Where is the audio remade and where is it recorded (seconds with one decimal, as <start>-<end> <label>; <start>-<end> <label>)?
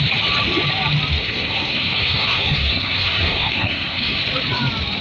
0.0-1.2 recorded; 1.2-4.2 remade; 4.2-5.0 recorded